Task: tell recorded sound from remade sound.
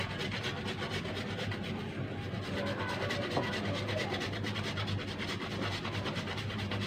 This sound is recorded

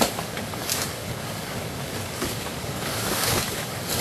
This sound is remade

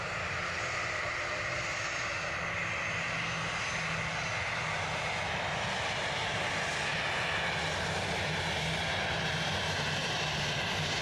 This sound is recorded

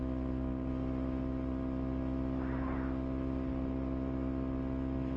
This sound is recorded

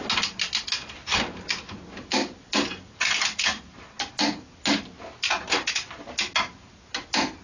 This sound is recorded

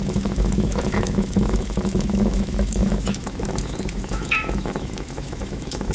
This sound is remade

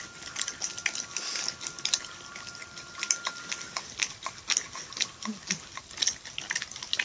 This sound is recorded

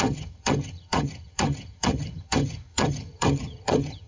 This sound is remade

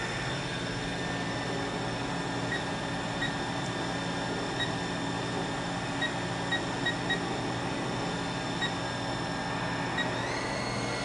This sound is recorded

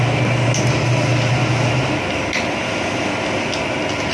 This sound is recorded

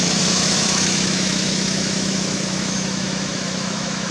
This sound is remade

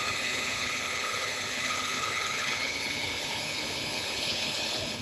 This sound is remade